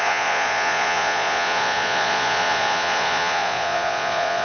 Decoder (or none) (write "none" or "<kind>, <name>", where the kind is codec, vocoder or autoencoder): vocoder, Vocos